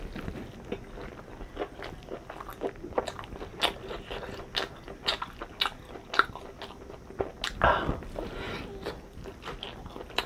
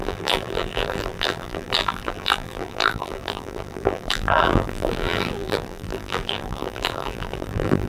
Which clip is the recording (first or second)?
first